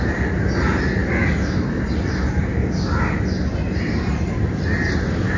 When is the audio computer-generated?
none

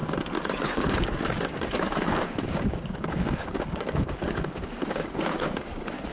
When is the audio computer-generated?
0.6-6.1 (codec, DAC)